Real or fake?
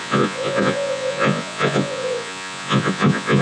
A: fake